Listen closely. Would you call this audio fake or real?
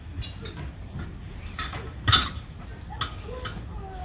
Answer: real